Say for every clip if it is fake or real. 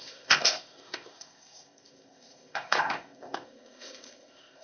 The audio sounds fake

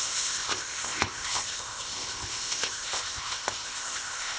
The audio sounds fake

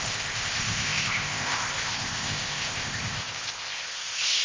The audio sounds fake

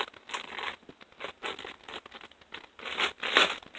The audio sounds real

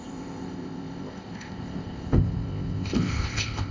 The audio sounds fake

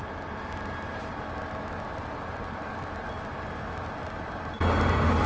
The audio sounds real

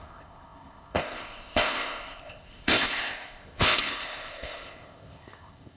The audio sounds fake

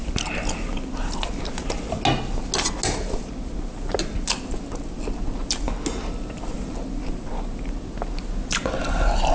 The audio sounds real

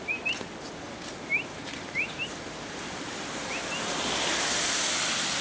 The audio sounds real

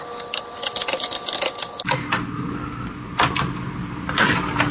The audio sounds real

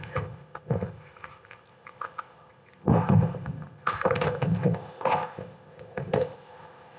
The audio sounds fake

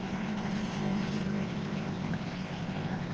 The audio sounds fake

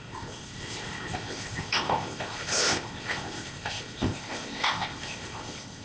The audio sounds fake